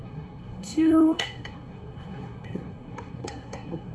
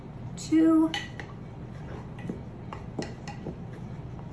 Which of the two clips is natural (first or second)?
second